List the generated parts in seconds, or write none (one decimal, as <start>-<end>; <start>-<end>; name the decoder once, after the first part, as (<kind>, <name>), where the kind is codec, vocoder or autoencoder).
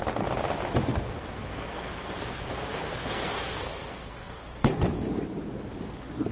0.9-4.7 (codec, SNAC)